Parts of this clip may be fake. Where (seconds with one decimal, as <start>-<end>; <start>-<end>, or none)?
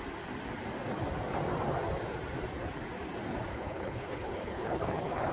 3.5-5.3